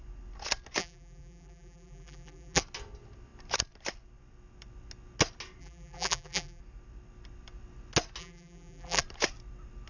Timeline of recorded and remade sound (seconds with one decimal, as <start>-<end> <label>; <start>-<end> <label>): 0.0-0.8 recorded; 0.8-2.6 remade; 2.6-5.6 recorded; 5.6-6.6 remade; 6.6-8.2 recorded; 8.2-9.0 remade; 9.0-9.9 recorded